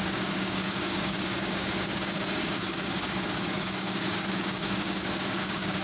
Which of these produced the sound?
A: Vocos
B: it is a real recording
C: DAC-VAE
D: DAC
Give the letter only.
D